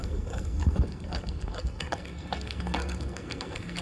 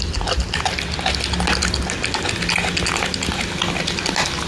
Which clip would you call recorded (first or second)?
second